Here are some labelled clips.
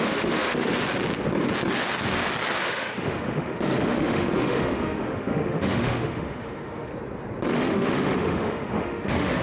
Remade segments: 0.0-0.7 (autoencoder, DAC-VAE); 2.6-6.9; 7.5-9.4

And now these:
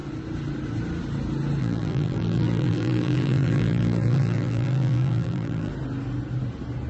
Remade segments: 1.6-5.7 (vocoder, BigVGAN v2)